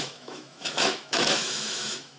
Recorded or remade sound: remade